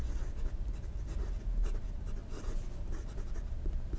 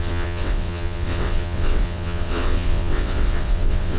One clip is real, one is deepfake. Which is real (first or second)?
first